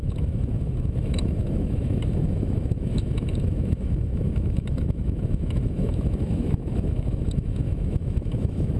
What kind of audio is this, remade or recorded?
remade